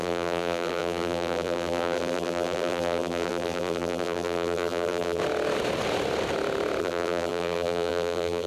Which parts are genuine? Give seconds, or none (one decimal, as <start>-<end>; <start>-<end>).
5.2-6.8